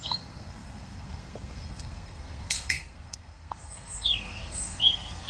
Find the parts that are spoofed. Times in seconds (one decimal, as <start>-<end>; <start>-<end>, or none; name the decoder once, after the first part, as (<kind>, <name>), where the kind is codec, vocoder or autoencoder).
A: 0.0-5.3 (codec, SNAC)